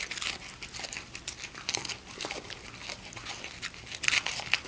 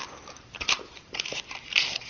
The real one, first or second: first